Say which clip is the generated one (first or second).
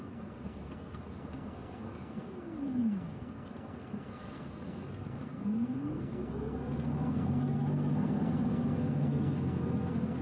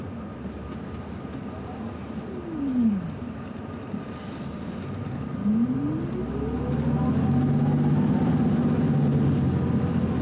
first